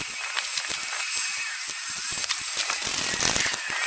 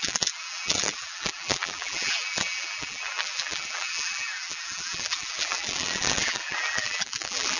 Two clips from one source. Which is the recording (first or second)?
first